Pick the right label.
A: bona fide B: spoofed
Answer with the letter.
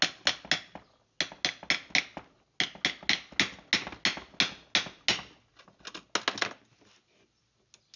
A